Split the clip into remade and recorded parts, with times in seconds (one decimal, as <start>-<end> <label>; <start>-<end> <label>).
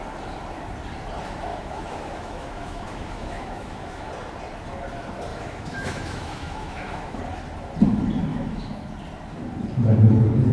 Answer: 0.0-1.5 recorded; 1.5-4.1 remade; 4.1-5.3 recorded; 5.3-7.2 remade; 7.2-8.3 recorded; 8.3-8.9 remade; 8.9-10.5 recorded